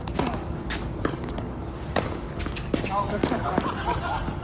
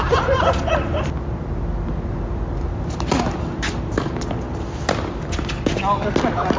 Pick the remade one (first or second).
first